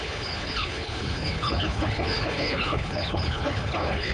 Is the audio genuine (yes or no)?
no